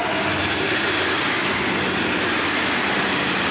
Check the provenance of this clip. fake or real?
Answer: real